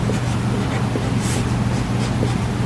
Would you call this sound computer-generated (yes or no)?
no